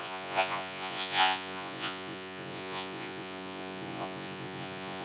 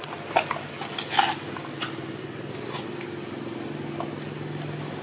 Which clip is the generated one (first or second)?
first